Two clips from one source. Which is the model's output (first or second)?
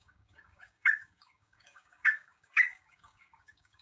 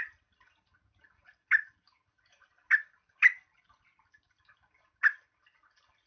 first